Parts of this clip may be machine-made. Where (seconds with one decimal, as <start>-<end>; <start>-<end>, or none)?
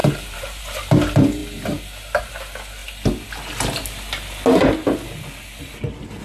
0.0-0.9